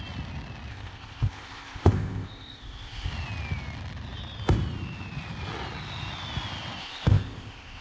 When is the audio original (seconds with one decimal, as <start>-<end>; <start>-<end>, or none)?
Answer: 0.0-0.7; 3.1-6.8